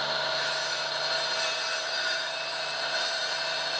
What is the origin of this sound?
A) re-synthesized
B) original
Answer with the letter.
A